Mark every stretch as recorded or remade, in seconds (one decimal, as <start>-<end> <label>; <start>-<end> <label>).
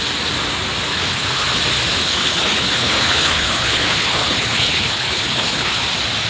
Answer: 0.0-0.9 recorded; 0.9-1.6 remade; 1.6-2.0 recorded; 2.0-5.8 remade; 5.8-6.3 recorded